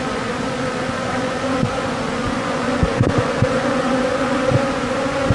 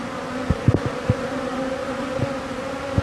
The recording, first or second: second